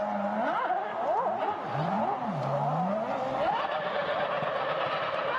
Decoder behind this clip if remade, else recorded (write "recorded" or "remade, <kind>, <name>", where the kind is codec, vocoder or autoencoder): recorded